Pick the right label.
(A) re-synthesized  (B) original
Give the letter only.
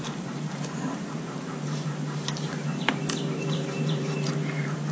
A